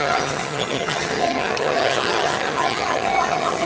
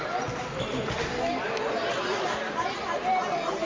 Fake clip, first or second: first